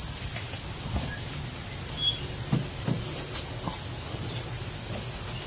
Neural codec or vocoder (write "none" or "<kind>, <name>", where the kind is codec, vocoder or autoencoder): none